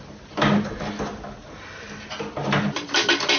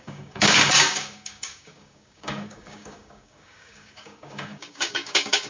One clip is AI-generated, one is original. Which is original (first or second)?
first